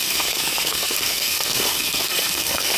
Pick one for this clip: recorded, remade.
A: remade